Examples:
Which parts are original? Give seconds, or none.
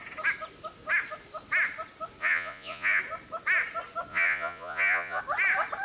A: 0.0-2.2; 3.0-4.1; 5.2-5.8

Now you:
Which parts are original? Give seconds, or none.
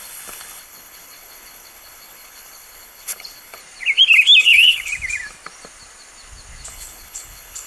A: 3.6-4.4; 4.9-6.7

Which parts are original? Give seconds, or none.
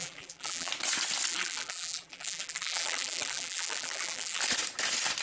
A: 0.7-1.3; 4.4-5.2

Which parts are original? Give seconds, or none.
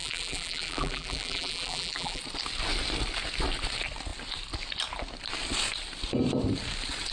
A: 2.2-7.1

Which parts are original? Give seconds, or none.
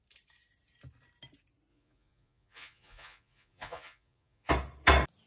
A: 0.0-1.7; 4.5-5.3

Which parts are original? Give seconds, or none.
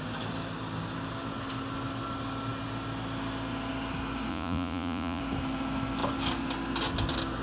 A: 0.0-4.3; 5.2-7.4